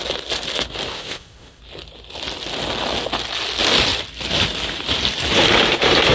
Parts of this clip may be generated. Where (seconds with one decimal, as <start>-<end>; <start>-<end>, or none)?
0.9-1.6